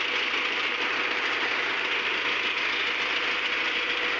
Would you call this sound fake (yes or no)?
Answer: no